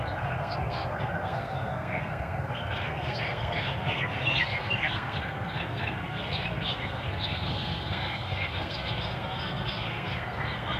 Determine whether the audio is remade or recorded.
remade